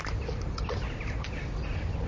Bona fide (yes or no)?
yes